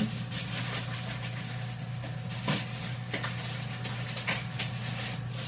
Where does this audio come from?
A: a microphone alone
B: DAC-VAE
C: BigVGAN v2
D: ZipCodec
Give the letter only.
A